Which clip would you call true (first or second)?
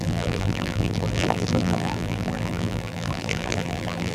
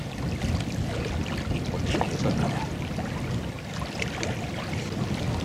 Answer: second